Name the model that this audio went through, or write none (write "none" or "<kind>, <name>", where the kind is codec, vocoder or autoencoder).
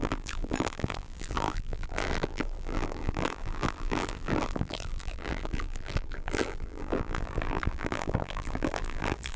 vocoder, BigVGAN v2